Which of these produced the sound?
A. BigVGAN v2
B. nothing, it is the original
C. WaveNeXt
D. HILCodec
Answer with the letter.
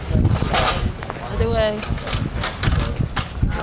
B